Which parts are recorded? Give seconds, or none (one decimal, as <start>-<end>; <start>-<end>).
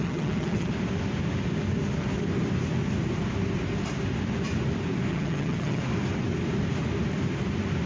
0.7-5.1; 5.8-7.9